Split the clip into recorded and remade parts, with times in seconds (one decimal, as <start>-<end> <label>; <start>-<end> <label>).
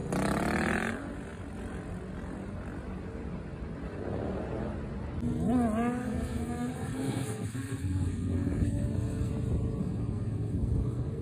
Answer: 0.0-6.0 recorded; 6.0-9.3 remade; 9.3-9.8 recorded; 9.8-11.2 remade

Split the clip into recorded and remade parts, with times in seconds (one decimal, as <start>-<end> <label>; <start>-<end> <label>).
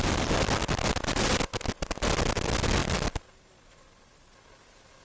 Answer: 0.0-5.0 recorded